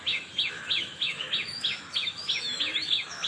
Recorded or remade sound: remade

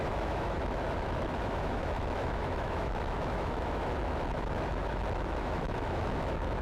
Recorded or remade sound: remade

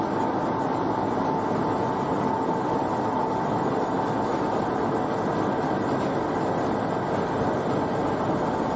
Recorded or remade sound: recorded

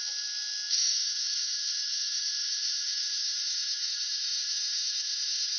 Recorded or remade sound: remade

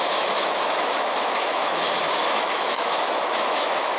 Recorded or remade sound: remade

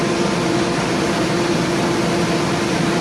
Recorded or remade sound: recorded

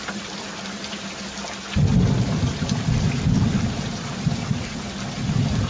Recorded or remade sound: recorded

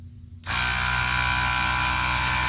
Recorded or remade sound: recorded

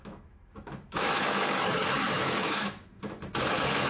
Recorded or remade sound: remade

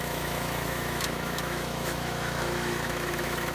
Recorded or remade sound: remade